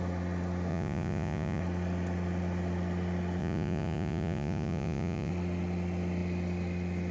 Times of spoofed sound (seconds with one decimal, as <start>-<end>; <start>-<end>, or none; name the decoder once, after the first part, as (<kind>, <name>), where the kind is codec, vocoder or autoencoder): 0.7-1.6 (vocoder, Vocos); 3.4-5.3